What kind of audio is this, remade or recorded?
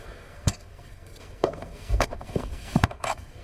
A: remade